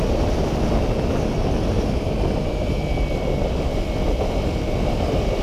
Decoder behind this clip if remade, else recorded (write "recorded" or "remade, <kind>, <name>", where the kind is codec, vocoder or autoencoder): recorded